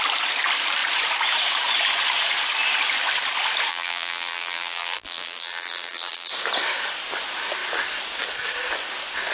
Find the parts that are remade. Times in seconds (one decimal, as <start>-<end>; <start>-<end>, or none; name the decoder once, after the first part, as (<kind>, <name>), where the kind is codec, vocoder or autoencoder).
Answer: 3.7-6.3 (vocoder, BigVGAN v2)